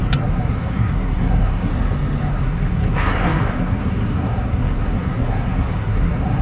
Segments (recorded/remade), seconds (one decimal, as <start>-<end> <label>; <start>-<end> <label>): 0.0-1.7 remade; 1.7-2.3 recorded; 2.3-6.4 remade